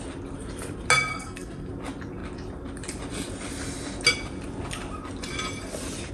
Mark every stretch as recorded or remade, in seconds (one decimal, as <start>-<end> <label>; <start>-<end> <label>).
0.0-1.1 recorded; 1.1-1.7 remade; 1.7-6.1 recorded